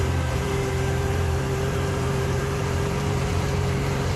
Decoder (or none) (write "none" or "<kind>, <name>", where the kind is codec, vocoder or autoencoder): vocoder, BigVGAN v2